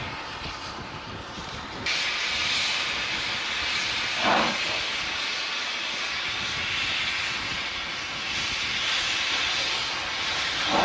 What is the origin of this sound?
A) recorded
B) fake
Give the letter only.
A